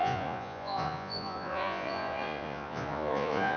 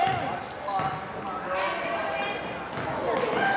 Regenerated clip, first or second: first